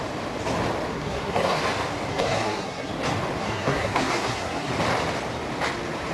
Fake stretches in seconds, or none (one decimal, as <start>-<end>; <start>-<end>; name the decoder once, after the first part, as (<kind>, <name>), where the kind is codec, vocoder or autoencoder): 0.9-1.6 (codec, SNAC); 2.1-2.9; 3.4-4.7